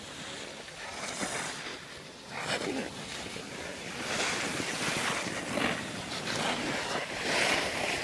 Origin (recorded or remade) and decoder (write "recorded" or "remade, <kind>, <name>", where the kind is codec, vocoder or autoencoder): recorded